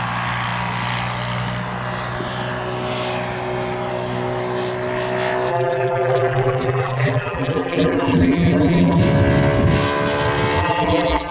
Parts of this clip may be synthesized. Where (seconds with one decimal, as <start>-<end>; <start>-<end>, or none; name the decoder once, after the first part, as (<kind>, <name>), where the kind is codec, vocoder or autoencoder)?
5.5-9.0 (vocoder, BigVGAN v2); 10.6-11.3